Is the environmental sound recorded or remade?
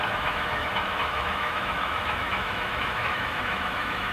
remade